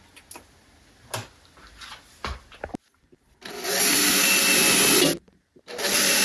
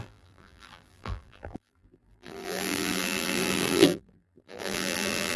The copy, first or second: second